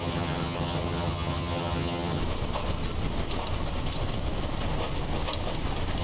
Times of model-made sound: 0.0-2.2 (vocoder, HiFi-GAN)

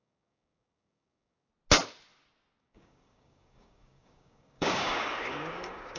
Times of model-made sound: 0.0-1.5 (codec, DAC); 2.6-6.0